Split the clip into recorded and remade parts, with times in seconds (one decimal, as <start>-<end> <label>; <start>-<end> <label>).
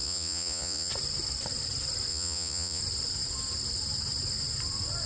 0.0-0.9 remade; 0.9-2.1 recorded; 2.1-2.8 remade; 2.8-5.1 recorded